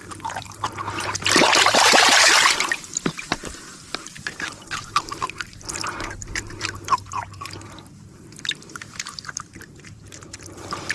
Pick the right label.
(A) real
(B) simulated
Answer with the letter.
B